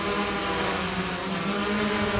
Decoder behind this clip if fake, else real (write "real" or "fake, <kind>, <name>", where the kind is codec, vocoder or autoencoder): real